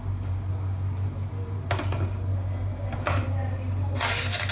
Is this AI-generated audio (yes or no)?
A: no